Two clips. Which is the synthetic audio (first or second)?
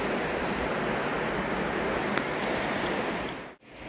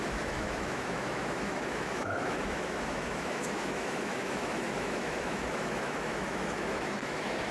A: second